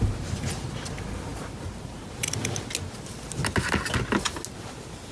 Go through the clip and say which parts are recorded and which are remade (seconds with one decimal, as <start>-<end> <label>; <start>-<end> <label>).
0.0-5.1 recorded